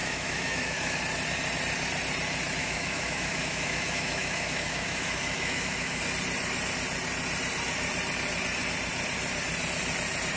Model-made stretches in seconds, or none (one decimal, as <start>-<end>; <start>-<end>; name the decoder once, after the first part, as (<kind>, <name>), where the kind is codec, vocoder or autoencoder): 0.0-1.0 (autoencoder, DAC-VAE); 2.6-6.0